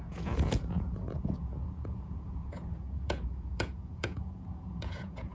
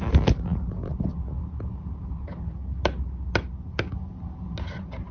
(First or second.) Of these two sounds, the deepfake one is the first